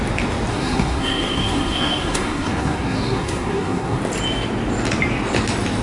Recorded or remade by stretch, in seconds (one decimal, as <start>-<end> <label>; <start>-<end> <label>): 0.0-0.5 recorded; 0.5-4.0 remade; 4.0-5.8 recorded